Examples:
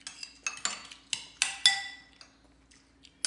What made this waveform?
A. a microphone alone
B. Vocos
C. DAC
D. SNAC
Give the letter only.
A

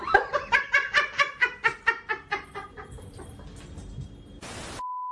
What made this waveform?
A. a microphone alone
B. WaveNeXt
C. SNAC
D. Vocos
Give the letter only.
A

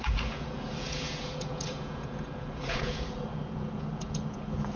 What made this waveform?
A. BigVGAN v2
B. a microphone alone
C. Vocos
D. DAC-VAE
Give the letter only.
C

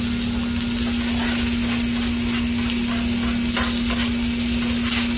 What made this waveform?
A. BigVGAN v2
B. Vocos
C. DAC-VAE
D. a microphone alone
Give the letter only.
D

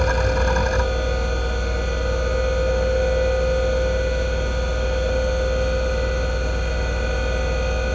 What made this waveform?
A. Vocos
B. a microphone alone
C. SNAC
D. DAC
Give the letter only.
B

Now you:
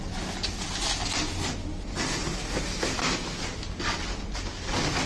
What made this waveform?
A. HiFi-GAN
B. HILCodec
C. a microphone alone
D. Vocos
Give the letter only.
C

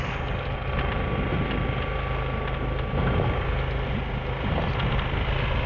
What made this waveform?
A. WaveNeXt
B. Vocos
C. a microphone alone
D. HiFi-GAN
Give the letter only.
C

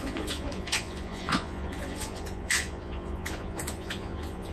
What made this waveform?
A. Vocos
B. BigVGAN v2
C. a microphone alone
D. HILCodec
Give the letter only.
A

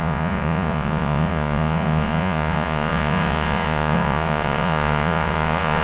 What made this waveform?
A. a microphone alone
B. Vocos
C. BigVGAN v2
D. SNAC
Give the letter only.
B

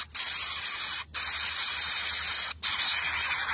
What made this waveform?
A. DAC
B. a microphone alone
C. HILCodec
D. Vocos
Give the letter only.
B